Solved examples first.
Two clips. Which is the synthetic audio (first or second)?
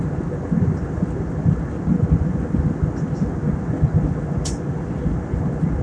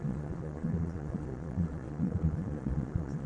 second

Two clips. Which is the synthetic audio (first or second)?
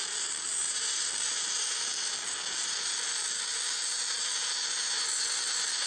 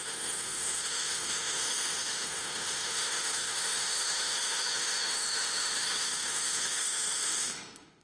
second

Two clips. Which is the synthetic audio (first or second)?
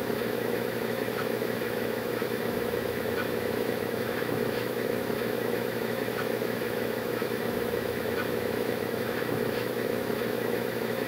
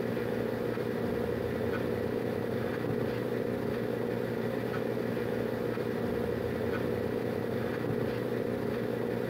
first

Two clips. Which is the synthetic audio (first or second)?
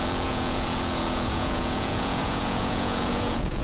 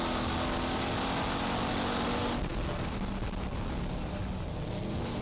first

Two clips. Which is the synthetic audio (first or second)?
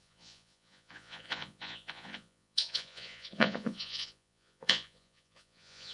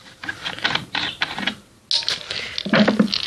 first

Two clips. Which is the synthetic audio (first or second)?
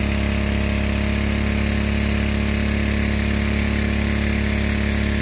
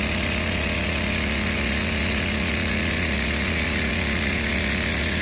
second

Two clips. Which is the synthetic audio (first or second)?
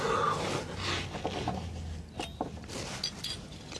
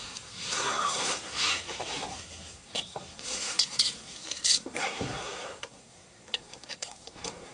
second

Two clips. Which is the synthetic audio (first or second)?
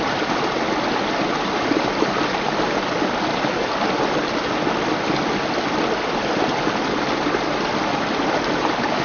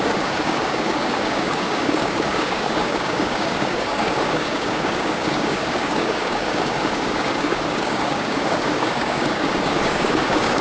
second